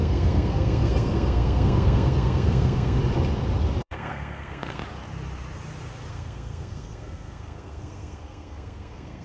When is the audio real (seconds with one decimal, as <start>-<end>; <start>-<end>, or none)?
3.0-3.8; 4.8-6.1